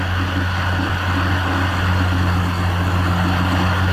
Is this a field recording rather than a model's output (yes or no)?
yes